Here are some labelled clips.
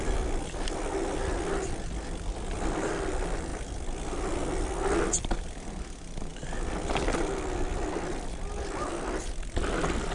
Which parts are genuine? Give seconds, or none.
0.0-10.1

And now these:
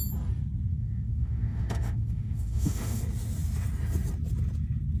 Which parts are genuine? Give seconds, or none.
0.0-0.7; 3.0-5.0

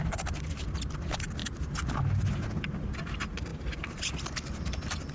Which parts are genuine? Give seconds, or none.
0.0-5.1

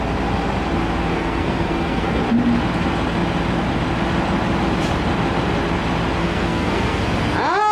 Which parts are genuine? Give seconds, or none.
0.0-1.1; 2.2-6.2; 7.0-7.7

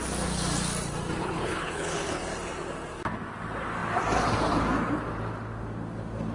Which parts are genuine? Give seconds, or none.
0.0-1.2; 2.2-6.3

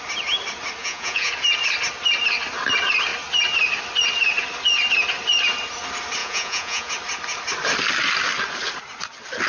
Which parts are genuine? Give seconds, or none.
0.0-0.8; 1.3-6.2; 6.9-9.5

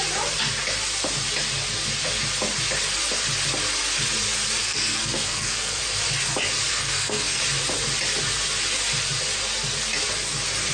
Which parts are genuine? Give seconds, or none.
0.0-4.6; 5.8-6.7; 7.4-10.7

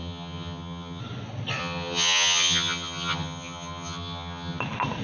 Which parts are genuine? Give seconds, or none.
1.0-1.6; 4.6-5.0